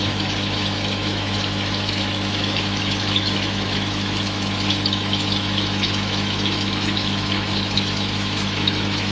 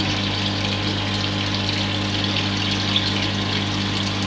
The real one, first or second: second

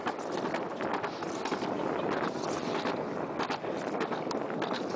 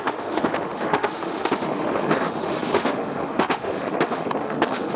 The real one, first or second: first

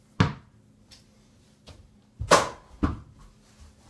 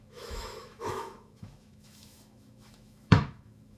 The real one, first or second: first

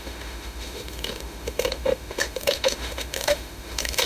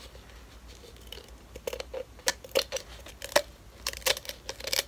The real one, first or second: second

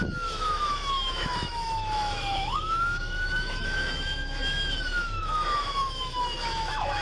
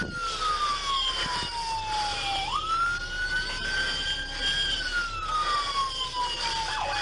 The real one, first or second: second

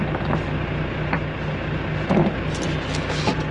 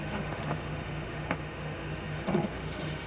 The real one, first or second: first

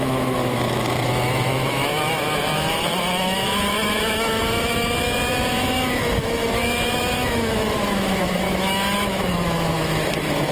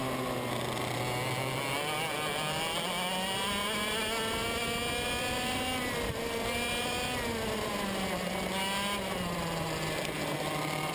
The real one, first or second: second